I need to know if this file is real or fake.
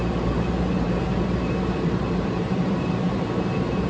fake